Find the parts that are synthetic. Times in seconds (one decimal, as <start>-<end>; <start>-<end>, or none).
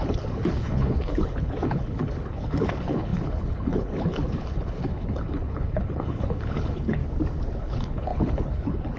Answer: 0.0-7.0; 7.6-9.0